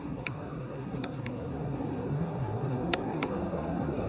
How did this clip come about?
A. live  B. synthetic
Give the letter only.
B